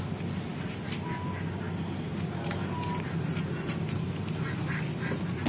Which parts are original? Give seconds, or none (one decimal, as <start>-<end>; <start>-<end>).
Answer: 0.0-5.5